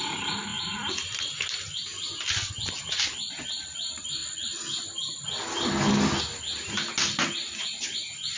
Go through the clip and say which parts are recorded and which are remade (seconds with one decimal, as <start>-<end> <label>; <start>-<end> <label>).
0.0-8.4 recorded